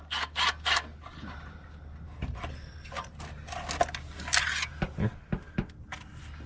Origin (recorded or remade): recorded